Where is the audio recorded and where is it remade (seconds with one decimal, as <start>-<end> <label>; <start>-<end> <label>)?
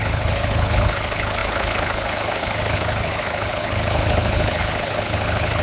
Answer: 0.0-5.6 remade